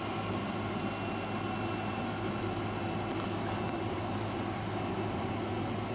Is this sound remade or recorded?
recorded